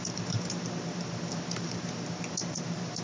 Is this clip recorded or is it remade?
remade